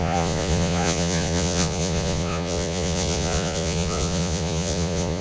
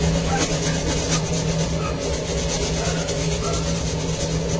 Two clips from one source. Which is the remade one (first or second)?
first